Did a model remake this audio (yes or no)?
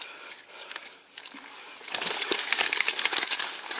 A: yes